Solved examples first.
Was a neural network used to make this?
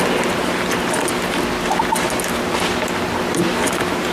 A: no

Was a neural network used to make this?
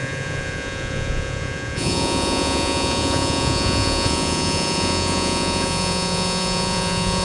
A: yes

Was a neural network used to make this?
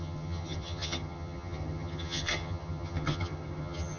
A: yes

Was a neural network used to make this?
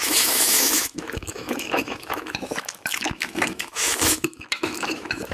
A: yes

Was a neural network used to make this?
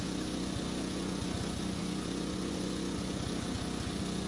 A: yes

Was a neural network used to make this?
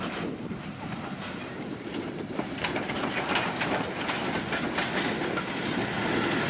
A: no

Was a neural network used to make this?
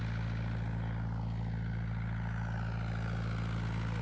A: no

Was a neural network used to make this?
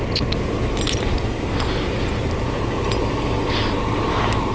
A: no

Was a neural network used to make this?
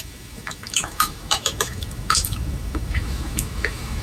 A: yes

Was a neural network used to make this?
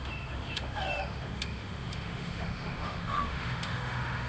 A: yes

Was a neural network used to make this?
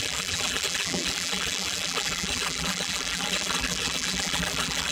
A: yes